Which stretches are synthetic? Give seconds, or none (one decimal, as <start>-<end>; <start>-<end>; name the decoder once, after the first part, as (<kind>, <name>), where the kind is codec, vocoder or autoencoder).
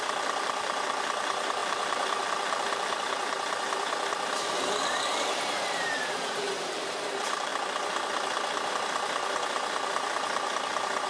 0.0-7.5 (vocoder, BigVGAN v2); 8.7-11.1